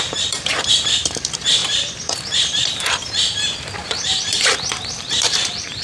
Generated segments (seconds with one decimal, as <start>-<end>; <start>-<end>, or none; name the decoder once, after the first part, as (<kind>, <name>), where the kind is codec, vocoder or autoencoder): 0.0-5.8 (vocoder, BigVGAN v2)